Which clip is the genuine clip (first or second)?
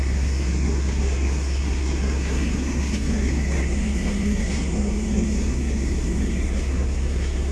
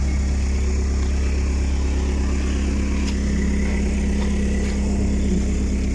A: second